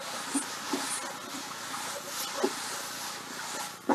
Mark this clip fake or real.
real